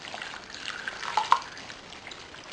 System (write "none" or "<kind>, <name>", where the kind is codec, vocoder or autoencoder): none